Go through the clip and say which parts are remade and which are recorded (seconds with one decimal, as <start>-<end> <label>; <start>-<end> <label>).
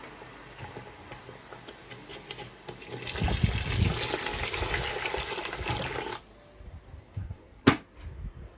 0.0-7.0 recorded; 7.0-7.7 remade; 7.7-8.6 recorded